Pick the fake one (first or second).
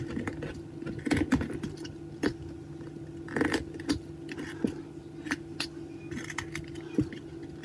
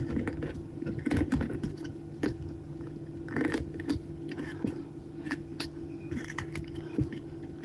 second